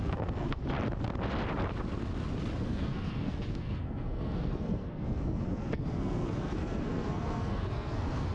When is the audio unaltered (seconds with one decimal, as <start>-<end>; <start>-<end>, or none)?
0.6-2.6